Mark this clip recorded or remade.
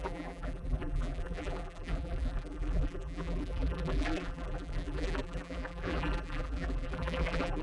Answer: remade